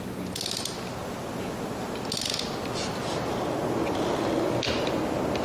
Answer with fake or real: real